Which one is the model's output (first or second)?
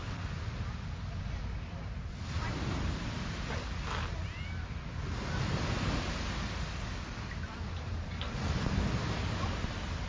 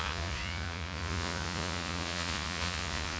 second